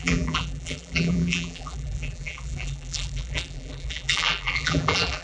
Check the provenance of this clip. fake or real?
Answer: fake